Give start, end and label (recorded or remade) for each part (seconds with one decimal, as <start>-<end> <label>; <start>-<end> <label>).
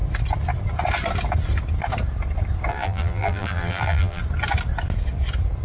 0.0-2.7 recorded; 2.7-4.2 remade; 4.2-5.6 recorded